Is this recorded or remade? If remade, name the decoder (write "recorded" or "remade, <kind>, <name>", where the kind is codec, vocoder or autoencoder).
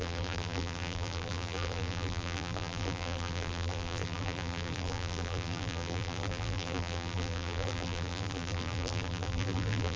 remade, vocoder, BigVGAN v2